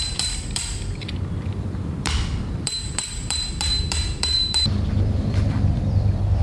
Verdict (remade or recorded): remade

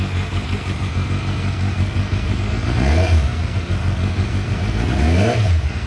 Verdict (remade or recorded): remade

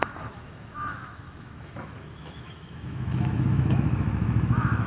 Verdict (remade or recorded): remade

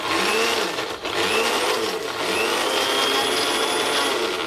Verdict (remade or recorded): recorded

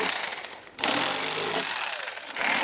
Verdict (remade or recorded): recorded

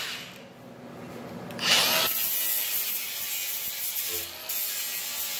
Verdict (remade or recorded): recorded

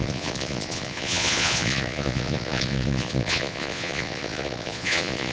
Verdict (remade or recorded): remade